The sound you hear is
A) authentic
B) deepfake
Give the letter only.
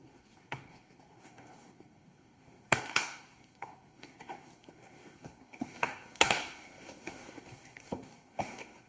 B